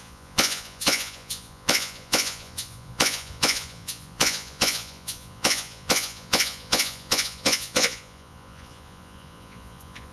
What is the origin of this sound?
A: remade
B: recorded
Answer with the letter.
A